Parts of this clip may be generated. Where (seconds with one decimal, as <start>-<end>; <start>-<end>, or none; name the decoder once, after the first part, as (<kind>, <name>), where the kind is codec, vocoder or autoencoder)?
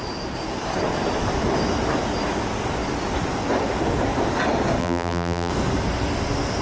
4.8-5.5 (vocoder, BigVGAN v2)